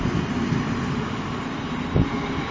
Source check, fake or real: real